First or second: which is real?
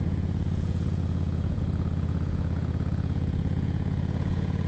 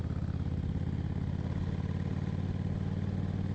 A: second